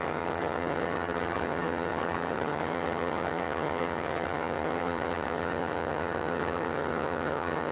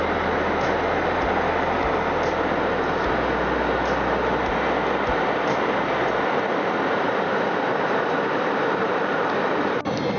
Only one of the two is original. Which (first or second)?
second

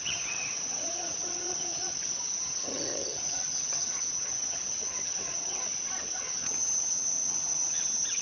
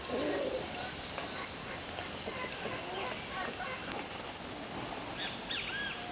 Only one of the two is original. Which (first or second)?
second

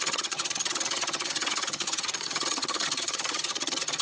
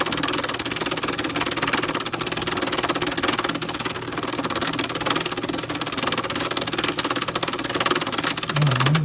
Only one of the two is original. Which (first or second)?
second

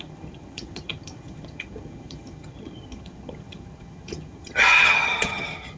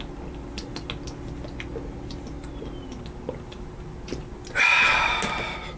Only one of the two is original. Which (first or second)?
second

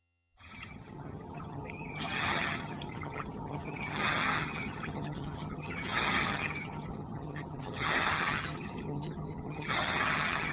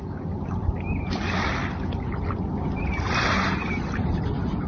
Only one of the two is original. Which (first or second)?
second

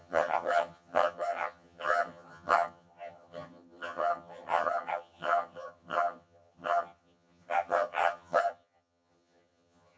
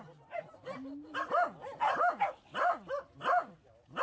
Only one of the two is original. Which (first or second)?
second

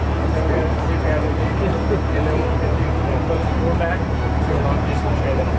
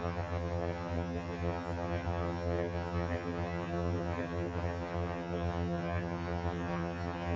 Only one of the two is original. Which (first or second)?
first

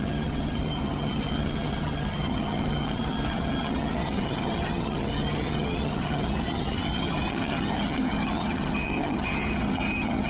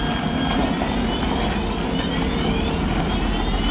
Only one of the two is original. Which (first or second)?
second